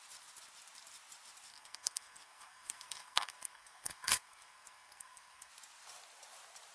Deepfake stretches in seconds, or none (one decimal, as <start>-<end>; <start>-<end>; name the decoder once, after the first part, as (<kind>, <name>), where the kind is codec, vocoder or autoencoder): 1.5-5.5 (codec, SNAC)